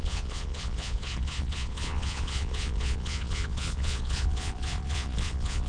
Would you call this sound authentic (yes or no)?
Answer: no